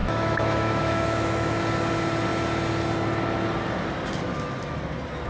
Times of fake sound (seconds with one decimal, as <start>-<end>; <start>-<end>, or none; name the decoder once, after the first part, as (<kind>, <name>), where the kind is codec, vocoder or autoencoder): 0.0-1.6 (autoencoder, DAC-VAE)